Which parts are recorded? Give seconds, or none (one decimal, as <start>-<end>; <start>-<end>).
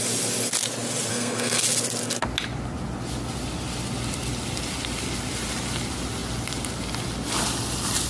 0.0-1.1; 1.6-8.1